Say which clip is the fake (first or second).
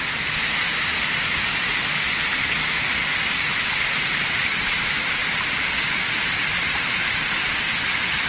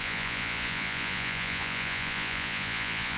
second